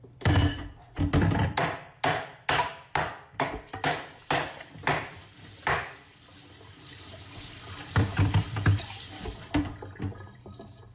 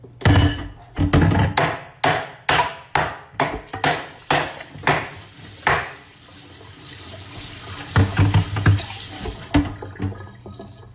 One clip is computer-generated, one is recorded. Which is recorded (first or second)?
second